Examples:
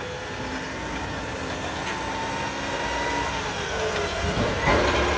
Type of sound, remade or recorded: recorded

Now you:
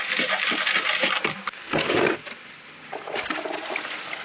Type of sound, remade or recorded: recorded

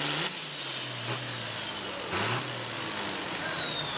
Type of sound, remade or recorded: recorded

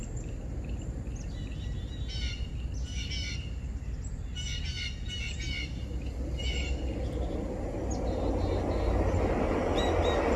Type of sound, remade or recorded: recorded